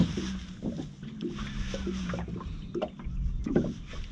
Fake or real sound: real